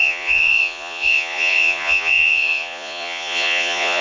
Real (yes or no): no